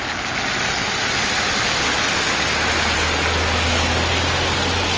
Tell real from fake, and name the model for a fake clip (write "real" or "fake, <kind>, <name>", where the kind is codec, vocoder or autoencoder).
real